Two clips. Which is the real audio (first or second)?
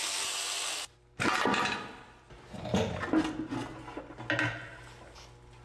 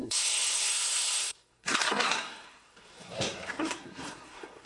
first